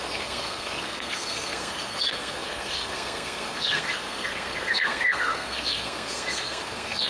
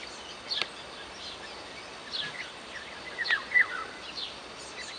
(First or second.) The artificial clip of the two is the first